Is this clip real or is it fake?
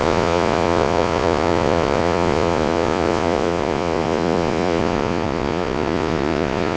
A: fake